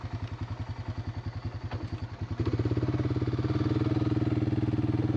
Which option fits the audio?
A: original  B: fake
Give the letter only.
A